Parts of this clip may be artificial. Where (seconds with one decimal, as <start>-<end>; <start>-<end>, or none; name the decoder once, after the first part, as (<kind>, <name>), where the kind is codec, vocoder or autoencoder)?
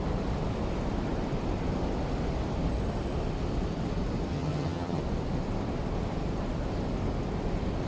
4.3-5.0 (vocoder, HiFi-GAN)